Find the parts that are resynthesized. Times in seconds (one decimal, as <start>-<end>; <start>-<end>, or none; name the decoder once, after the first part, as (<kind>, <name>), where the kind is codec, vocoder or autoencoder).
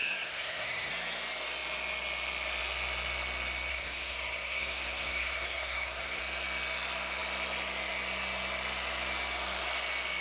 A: 0.0-0.9 (codec, SNAC); 3.7-6.2